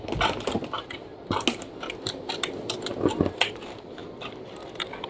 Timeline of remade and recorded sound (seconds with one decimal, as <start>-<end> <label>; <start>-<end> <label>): 0.0-5.1 recorded